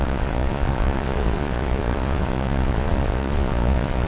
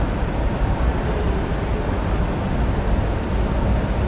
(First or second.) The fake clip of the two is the first